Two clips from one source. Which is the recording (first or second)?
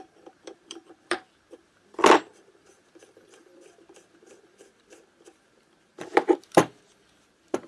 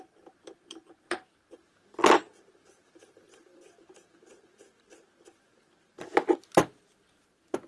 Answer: second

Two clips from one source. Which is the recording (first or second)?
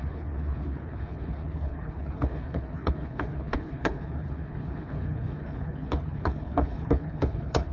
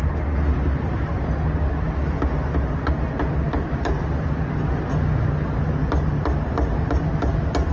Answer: second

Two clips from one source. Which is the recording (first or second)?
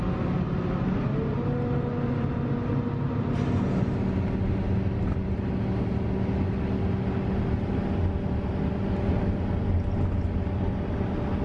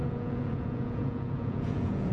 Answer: first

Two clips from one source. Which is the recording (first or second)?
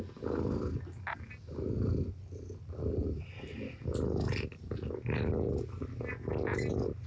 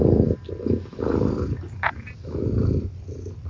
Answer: first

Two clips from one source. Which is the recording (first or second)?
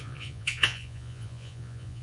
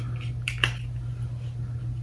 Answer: second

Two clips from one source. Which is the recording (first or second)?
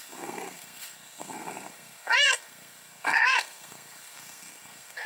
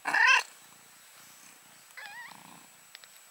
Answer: second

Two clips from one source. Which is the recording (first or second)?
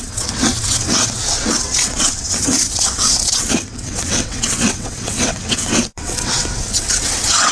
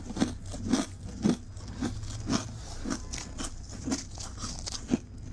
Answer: second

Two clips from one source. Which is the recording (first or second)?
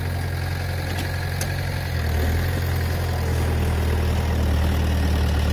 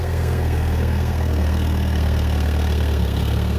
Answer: first